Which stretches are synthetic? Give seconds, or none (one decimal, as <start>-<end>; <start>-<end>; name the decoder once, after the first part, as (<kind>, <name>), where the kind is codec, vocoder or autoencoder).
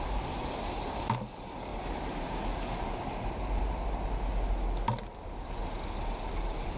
1.7-3.6 (vocoder, BigVGAN v2)